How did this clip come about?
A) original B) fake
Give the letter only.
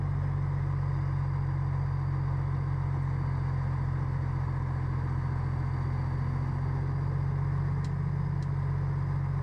A